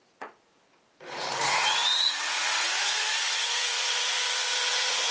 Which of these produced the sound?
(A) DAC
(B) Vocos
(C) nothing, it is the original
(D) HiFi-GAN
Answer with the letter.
B